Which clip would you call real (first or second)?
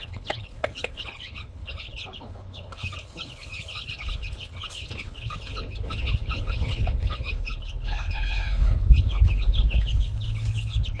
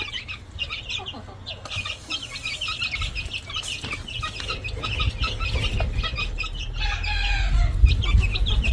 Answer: second